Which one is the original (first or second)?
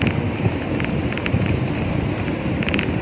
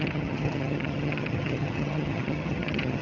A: first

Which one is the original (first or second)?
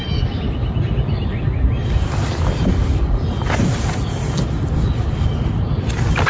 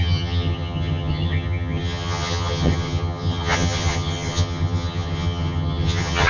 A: first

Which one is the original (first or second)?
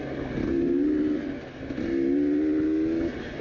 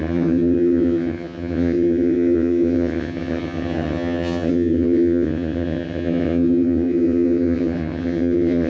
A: first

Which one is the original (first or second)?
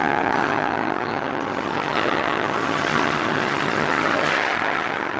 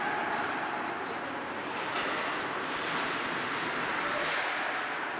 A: second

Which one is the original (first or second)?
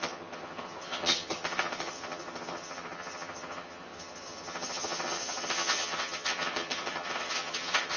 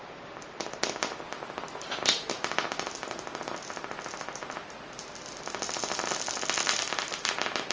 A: second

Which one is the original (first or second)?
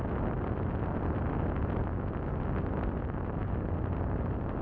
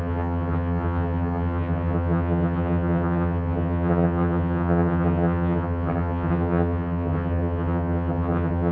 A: first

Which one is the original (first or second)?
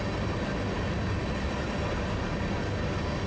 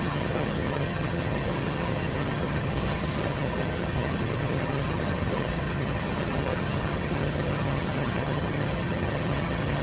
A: first